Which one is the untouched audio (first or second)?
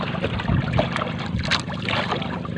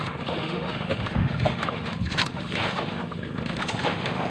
first